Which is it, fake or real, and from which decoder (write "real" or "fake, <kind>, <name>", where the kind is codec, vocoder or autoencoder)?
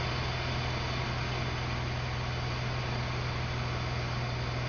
real